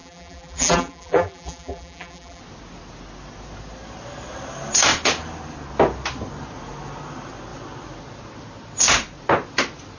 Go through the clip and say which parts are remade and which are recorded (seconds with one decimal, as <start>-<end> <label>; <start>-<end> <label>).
0.0-2.4 remade; 2.4-10.0 recorded